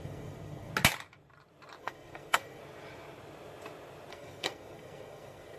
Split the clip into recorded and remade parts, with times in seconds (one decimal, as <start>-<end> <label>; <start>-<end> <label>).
0.0-0.7 remade; 0.7-1.8 recorded; 1.8-2.6 remade; 2.6-4.1 recorded; 4.1-5.6 remade